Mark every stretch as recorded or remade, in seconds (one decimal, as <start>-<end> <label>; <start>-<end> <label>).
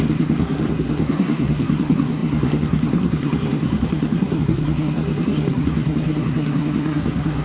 0.0-7.4 remade